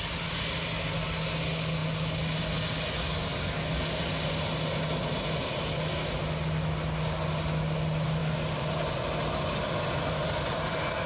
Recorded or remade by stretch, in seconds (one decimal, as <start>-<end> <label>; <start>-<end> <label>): 0.0-11.1 recorded